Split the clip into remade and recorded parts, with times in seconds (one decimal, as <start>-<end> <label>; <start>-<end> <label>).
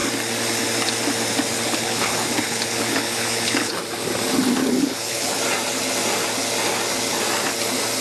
0.0-1.5 recorded; 1.5-3.8 remade; 3.8-4.6 recorded; 4.6-5.4 remade; 5.4-8.0 recorded